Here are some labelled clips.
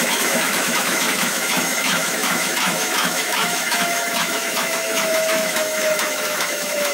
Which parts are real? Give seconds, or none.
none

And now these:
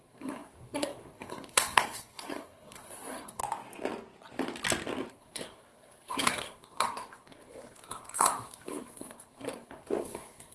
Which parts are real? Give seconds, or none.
3.4-5.1